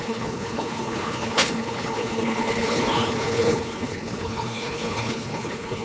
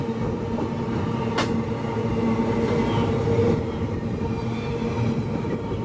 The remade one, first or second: first